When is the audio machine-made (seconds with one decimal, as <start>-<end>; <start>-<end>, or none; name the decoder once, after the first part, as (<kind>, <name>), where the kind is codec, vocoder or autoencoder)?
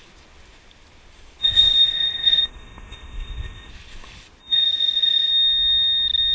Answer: 1.4-3.7 (codec, ZipCodec); 4.4-5.3